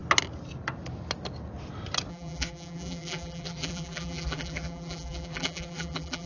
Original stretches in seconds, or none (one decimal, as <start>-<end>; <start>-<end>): 0.0-2.1